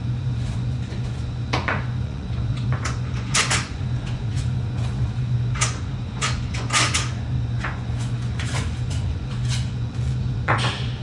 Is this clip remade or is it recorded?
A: remade